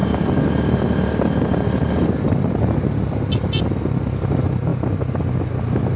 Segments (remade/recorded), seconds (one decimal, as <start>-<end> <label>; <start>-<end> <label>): 0.0-6.0 recorded